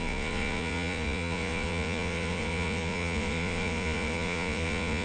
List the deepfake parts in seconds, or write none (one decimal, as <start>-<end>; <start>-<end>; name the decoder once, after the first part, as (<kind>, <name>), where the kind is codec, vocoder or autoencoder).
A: 0.0-5.0 (vocoder, Vocos)